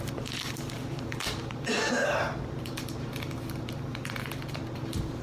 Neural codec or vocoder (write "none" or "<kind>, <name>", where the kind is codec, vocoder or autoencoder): vocoder, BigVGAN v2